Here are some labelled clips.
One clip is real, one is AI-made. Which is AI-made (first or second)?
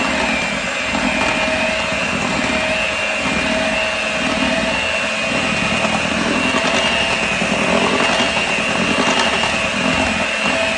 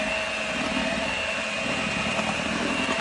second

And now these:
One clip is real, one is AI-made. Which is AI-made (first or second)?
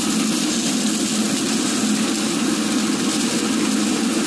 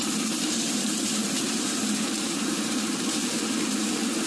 second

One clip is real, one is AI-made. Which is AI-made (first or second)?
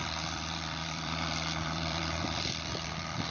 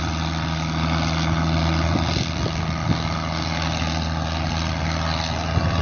first